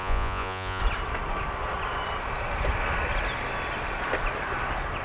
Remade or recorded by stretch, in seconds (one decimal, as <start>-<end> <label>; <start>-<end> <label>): 0.0-0.8 remade; 0.8-5.0 recorded